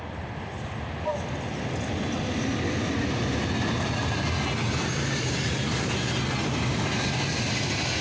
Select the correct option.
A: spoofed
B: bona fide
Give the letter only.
B